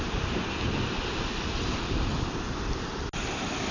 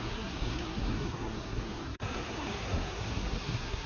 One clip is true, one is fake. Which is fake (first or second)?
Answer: second